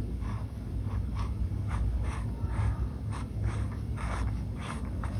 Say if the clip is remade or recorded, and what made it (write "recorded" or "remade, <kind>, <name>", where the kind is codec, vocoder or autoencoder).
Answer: remade, codec, DAC